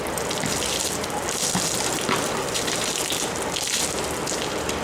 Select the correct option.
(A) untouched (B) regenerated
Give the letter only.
A